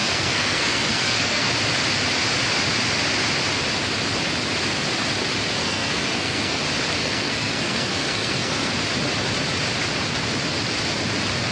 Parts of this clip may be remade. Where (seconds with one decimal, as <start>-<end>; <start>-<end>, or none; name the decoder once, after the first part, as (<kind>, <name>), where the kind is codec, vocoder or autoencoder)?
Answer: 0.0-1.5 (codec, SNAC); 5.6-6.6; 7.0-8.7